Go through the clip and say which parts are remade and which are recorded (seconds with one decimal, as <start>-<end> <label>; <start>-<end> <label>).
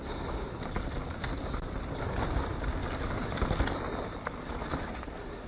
0.0-5.5 recorded